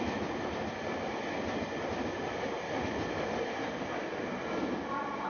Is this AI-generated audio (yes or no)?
no